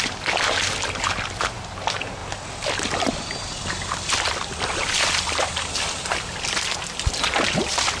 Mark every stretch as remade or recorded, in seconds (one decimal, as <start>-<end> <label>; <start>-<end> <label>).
0.0-8.0 recorded